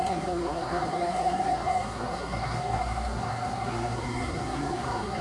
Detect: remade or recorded remade